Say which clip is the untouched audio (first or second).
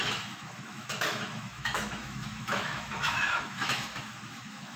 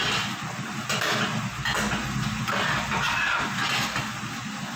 second